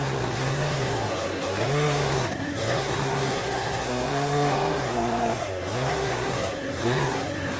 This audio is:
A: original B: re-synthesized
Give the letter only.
B